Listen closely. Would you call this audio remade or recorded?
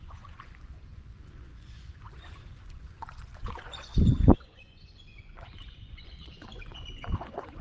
remade